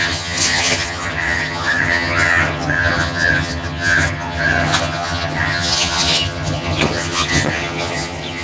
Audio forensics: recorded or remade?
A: remade